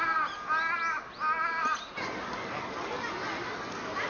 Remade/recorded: recorded